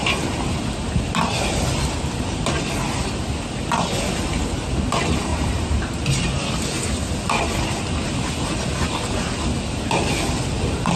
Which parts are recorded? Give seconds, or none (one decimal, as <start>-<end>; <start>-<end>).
0.0-5.3; 6.0-11.0